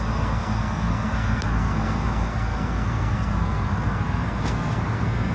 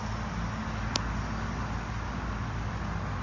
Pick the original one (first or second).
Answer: second